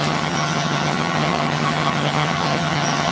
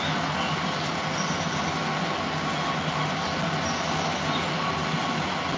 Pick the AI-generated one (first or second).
first